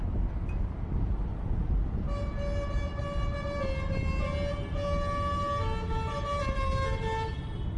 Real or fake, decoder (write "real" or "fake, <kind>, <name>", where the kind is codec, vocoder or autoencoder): real